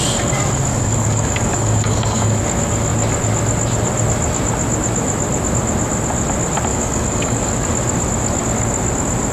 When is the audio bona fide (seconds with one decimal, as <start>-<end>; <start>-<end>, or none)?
0.0-0.7; 2.4-6.7; 7.5-9.3